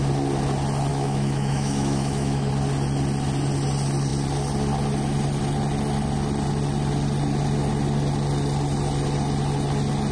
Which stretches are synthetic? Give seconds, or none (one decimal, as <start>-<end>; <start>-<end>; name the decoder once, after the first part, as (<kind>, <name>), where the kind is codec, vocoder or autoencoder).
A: 0.9-2.5 (autoencoder, DAC-VAE)